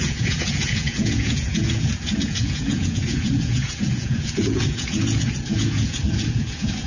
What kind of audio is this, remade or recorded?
remade